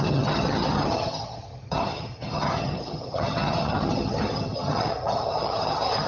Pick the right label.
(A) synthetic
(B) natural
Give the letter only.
A